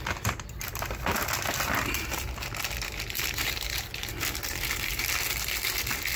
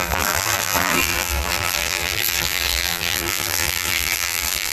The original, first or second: first